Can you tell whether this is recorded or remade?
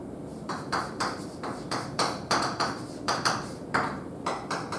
remade